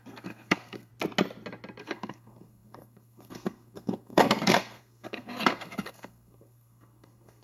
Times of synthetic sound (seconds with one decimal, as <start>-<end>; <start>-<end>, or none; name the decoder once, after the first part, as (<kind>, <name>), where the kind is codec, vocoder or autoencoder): 0.0-0.9 (codec, SNAC); 1.8-7.4